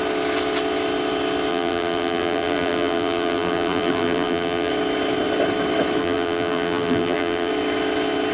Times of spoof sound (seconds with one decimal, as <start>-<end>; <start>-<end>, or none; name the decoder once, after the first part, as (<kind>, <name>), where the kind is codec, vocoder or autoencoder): 1.5-4.7 (vocoder, BigVGAN v2); 6.0-7.5